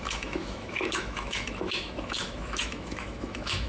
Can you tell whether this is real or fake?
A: fake